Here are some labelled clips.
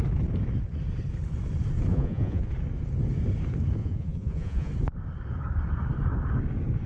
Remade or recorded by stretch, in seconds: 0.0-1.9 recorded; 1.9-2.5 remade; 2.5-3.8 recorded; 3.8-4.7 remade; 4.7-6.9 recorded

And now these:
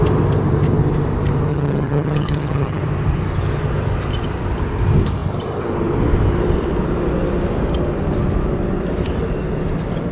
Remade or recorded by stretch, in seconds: 0.0-1.5 recorded; 1.5-2.8 remade; 2.8-10.1 recorded

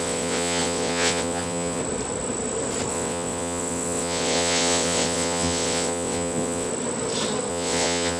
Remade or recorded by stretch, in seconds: 0.0-1.8 remade; 1.8-2.9 recorded; 2.9-6.7 remade; 6.7-7.5 recorded; 7.5-8.2 remade

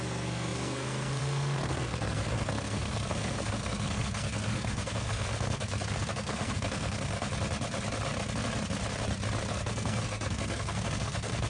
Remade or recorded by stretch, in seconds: 0.0-7.3 remade; 7.3-9.5 recorded; 9.5-11.5 remade

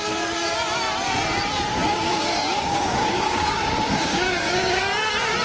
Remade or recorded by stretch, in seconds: 0.0-1.7 recorded; 1.7-4.8 remade; 4.8-5.4 recorded

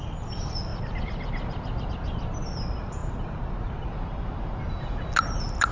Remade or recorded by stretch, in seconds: 0.0-3.0 recorded; 3.0-3.7 remade; 3.7-5.7 recorded

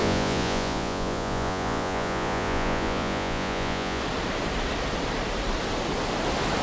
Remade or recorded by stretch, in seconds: 0.0-4.0 remade; 4.0-6.6 recorded

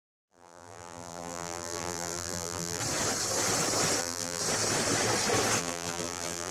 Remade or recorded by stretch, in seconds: 0.0-2.8 remade; 2.8-4.0 recorded; 4.0-4.4 remade; 4.4-5.6 recorded; 5.6-6.5 remade